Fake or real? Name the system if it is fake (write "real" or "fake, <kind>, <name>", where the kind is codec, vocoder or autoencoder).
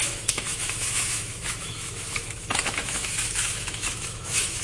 fake, autoencoder, DAC-VAE